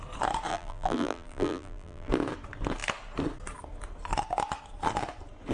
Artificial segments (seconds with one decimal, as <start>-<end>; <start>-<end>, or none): 0.5-2.1